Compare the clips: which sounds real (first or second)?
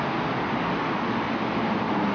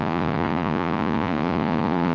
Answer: first